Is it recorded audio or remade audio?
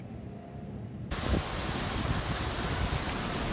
recorded